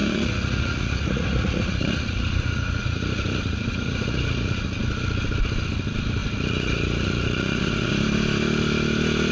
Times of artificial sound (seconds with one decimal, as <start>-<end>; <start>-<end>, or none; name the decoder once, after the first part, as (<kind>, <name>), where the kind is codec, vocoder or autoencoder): 0.0-4.8 (vocoder, Vocos); 6.2-7.9